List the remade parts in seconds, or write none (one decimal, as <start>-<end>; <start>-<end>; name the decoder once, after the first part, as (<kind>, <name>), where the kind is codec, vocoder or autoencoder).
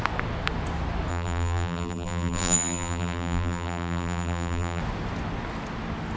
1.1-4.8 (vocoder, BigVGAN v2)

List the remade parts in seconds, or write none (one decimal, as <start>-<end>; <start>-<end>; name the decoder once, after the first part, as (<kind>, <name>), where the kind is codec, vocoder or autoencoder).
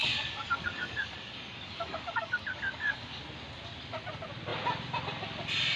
0.0-3.2 (codec, DAC)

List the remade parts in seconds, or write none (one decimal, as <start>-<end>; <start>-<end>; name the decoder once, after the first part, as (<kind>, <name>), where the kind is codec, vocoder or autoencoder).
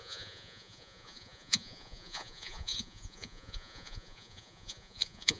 0.0-5.4 (vocoder, Vocos)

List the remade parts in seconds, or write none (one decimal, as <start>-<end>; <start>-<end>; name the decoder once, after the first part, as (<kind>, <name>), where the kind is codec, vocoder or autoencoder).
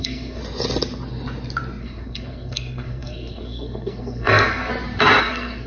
0.0-0.4 (codec, SNAC); 1.8-4.7; 5.2-5.7